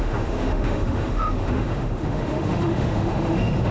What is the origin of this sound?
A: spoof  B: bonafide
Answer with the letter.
A